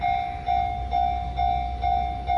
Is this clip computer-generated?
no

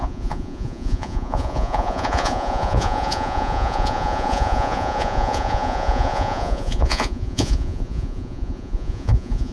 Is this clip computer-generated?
yes